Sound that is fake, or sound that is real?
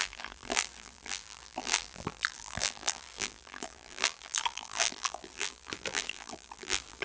fake